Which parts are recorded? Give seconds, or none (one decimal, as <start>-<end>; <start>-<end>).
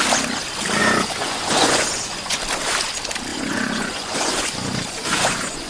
0.0-0.8; 2.4-3.3